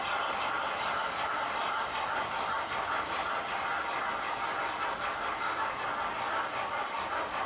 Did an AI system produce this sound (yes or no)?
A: no